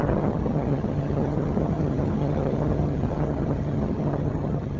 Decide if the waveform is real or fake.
fake